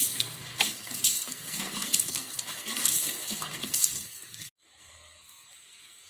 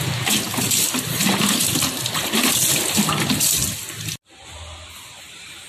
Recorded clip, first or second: second